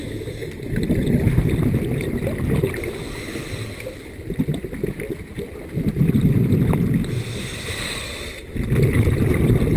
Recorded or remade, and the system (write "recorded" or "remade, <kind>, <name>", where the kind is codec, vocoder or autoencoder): recorded